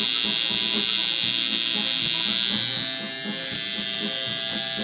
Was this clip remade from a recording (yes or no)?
no